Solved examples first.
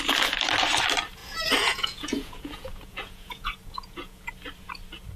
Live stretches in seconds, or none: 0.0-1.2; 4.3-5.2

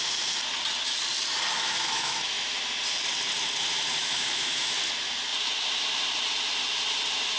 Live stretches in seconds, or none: 0.0-1.5; 2.6-4.0; 4.6-7.4

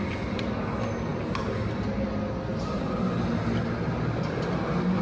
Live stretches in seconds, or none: 0.0-5.0

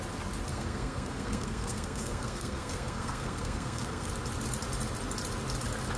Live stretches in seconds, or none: 0.0-0.5; 4.1-6.0

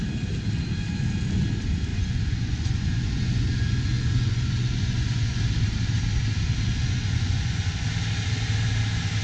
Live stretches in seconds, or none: 0.0-1.9; 5.4-6.8; 7.9-9.2

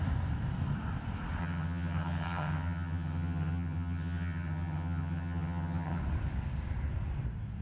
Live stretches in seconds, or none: 0.0-1.4; 6.0-7.6

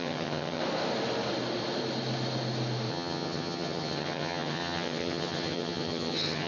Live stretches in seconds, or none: 0.6-2.9